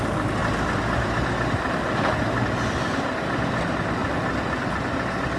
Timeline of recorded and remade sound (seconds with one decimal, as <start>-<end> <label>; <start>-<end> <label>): 0.0-5.4 recorded